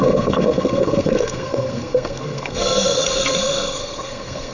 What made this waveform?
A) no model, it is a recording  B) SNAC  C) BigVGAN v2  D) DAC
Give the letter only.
B